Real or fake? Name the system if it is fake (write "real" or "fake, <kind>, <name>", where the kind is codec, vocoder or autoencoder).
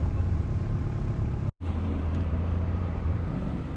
fake, vocoder, BigVGAN v2